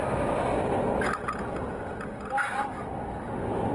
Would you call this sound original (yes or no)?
yes